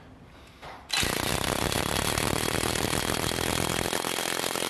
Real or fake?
real